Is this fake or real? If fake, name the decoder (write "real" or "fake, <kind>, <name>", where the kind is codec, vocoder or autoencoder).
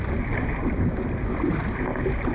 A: real